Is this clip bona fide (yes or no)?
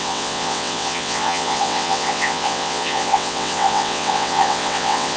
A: no